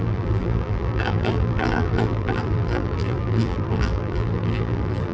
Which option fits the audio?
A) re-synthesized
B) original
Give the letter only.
A